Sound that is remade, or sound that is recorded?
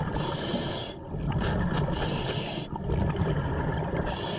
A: recorded